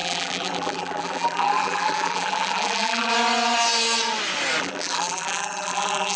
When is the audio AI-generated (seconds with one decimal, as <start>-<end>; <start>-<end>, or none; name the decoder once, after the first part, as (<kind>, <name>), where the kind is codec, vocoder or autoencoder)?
0.0-3.1 (vocoder, BigVGAN v2); 4.6-6.2